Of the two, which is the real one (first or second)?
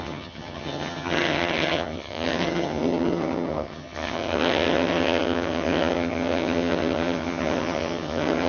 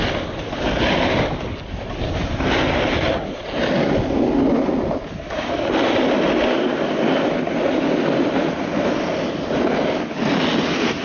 second